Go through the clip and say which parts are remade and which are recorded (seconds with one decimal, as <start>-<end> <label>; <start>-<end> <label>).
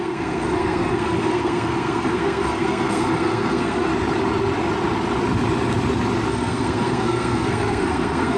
0.0-3.9 remade; 3.9-6.3 recorded; 6.3-8.4 remade